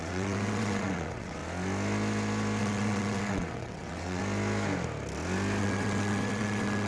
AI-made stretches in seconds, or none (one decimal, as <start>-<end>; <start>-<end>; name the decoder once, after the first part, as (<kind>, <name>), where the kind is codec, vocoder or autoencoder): 0.0-1.4 (vocoder, WaveNeXt); 2.6-4.2; 5.6-6.9